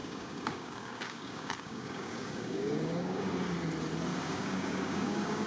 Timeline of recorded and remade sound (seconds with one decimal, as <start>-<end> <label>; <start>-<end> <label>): 0.0-3.3 remade; 3.3-4.1 recorded; 4.1-5.5 remade